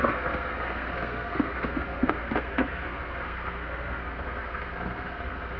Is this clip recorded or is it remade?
remade